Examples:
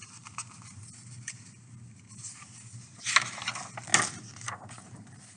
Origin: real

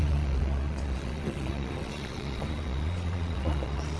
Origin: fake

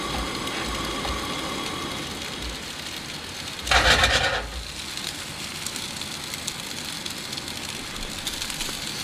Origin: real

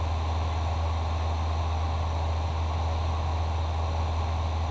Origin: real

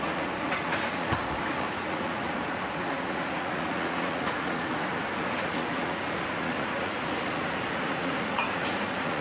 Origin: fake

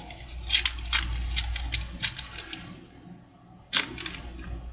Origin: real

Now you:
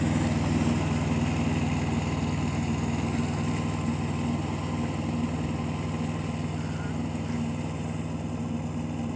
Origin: real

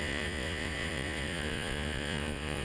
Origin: fake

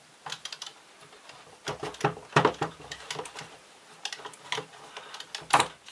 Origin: real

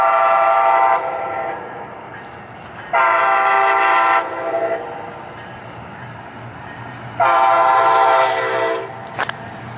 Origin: real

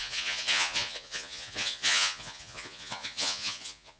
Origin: fake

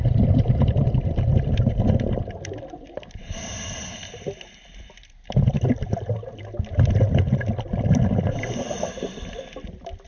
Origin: real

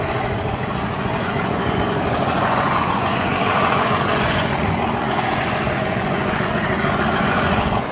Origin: fake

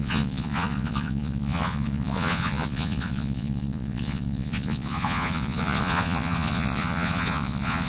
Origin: fake